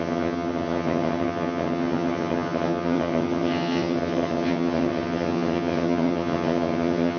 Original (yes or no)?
no